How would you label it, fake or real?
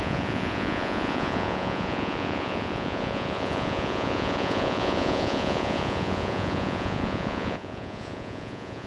fake